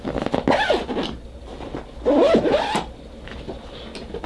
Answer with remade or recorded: recorded